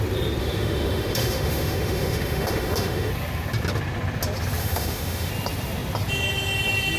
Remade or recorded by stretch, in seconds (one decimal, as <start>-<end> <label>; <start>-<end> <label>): 0.0-0.4 recorded; 0.4-3.1 remade; 3.1-4.6 recorded; 4.6-5.3 remade; 5.3-7.0 recorded

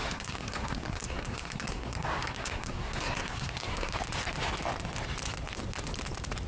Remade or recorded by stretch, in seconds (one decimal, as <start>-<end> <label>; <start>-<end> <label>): 0.0-3.9 remade; 3.9-6.5 recorded

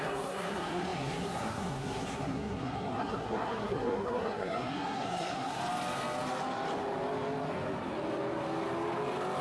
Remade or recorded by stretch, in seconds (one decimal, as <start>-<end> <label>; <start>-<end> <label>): 0.0-5.6 remade; 5.6-9.4 recorded

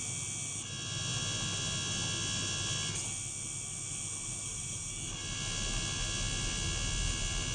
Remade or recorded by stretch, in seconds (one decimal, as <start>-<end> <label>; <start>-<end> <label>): 0.0-4.4 recorded; 4.4-4.9 remade; 4.9-7.5 recorded

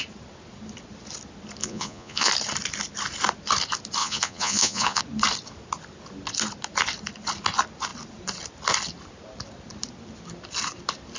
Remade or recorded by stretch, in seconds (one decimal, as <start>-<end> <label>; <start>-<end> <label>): 0.0-1.6 recorded; 1.6-2.3 remade; 2.3-4.0 recorded; 4.0-5.0 remade; 5.0-11.2 recorded

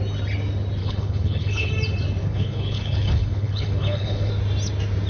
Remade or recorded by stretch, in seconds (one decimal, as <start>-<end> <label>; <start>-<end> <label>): 0.0-0.8 recorded; 0.8-1.7 remade; 1.7-2.2 recorded; 2.2-4.3 remade; 4.3-5.1 recorded

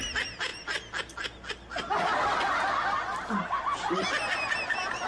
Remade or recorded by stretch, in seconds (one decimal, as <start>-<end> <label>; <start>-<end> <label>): 0.0-5.1 recorded